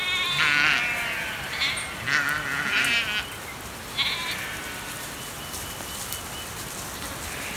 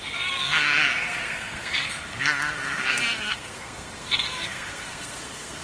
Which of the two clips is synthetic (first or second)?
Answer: second